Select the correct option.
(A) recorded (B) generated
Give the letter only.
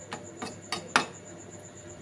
A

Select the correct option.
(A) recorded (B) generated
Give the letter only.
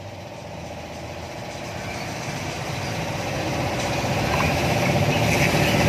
A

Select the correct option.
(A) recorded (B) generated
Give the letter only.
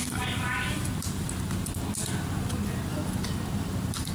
B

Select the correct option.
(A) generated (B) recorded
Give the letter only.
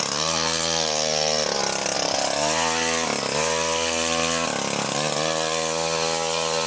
B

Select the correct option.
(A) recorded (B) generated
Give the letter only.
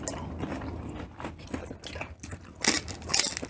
A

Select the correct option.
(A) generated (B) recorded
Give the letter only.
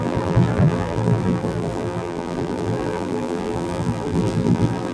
A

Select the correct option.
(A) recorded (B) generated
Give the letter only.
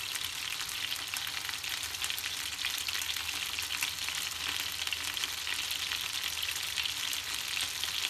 A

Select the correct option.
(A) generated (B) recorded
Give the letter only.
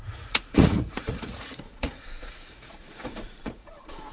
A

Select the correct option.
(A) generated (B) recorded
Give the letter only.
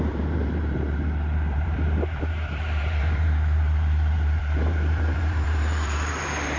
A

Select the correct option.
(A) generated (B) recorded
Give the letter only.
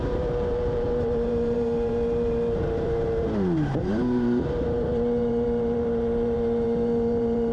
A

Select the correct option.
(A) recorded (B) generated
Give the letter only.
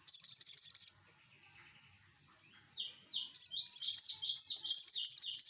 A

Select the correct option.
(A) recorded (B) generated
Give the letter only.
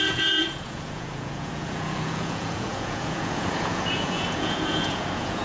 B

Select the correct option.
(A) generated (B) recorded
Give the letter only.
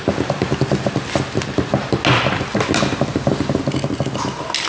B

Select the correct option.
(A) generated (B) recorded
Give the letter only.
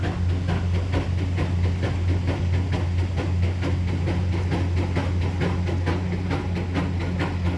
B